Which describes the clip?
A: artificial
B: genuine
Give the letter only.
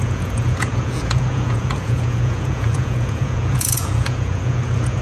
A